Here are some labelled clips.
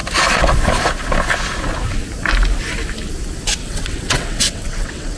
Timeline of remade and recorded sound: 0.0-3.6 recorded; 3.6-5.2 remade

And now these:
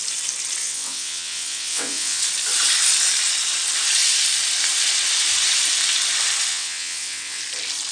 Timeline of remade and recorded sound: 0.0-0.6 recorded; 0.6-2.2 remade; 2.2-6.5 recorded; 6.5-7.4 remade; 7.4-7.9 recorded

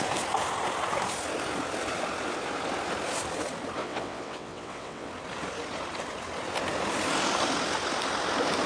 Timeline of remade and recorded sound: 0.0-3.8 recorded; 3.8-5.1 remade; 5.1-8.7 recorded

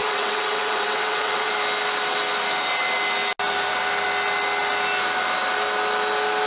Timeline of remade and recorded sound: 0.0-1.5 remade; 1.5-6.5 recorded

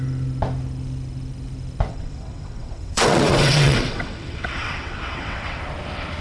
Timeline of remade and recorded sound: 0.0-1.9 recorded; 1.9-5.6 remade; 5.6-6.2 recorded

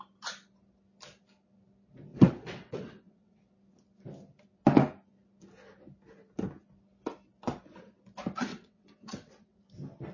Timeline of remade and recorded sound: 0.0-2.1 recorded; 2.1-3.4 remade; 3.4-8.5 recorded; 8.5-9.6 remade; 9.6-10.1 recorded